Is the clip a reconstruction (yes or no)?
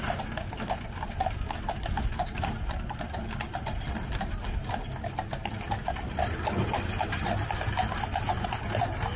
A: no